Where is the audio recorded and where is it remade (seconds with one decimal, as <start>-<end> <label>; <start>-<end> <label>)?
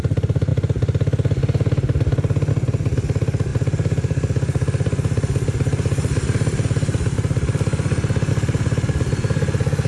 0.0-9.9 recorded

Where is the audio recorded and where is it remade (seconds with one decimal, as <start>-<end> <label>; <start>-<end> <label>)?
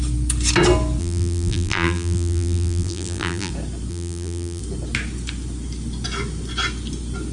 0.0-1.0 recorded; 1.0-3.5 remade; 3.5-3.9 recorded; 3.9-4.6 remade; 4.6-7.3 recorded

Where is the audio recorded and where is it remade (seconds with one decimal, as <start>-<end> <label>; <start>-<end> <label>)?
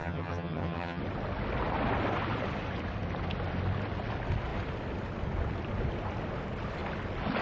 0.0-1.0 remade; 1.0-7.4 recorded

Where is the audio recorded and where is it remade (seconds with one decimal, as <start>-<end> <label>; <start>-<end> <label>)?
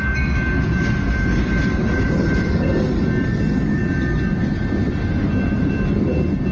0.0-6.5 recorded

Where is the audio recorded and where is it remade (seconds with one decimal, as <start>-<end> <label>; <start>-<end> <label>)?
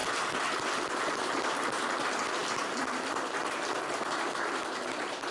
0.0-5.3 recorded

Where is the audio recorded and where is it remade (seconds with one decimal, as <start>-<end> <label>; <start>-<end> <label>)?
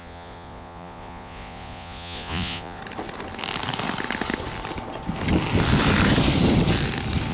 0.0-2.8 remade; 2.8-7.3 recorded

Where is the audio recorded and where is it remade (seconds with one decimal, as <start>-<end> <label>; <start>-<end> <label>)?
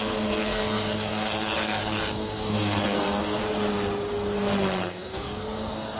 0.0-3.4 remade; 3.4-4.8 recorded; 4.8-6.0 remade